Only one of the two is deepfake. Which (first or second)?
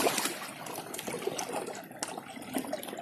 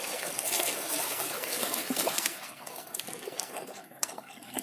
second